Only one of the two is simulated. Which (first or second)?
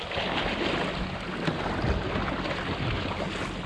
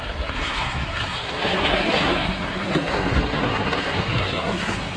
second